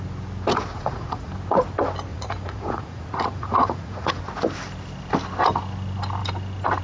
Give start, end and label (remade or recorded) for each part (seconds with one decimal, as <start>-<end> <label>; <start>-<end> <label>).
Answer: 0.0-0.7 recorded; 0.7-1.3 remade; 1.3-2.1 recorded; 2.1-4.2 remade; 4.2-6.8 recorded